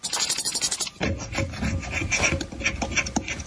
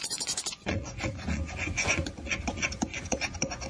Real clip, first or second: first